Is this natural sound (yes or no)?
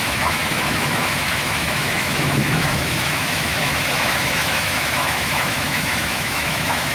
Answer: no